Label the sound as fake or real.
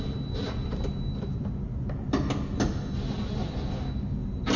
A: real